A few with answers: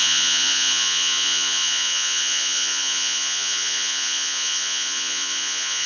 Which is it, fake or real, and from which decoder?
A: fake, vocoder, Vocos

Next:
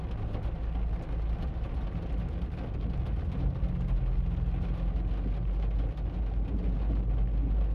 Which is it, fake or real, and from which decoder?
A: real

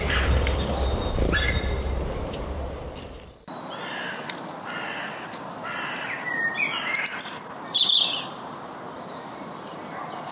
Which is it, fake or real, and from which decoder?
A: fake, vocoder, BigVGAN v2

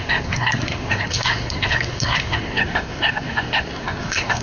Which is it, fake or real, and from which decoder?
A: fake, codec, SNAC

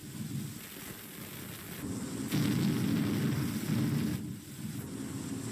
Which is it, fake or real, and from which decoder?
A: real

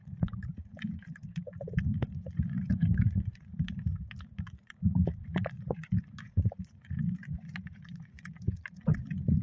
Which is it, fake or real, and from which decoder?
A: fake, vocoder, Vocos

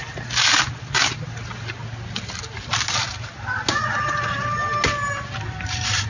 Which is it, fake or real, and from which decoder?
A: real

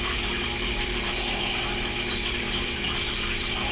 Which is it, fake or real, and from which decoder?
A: real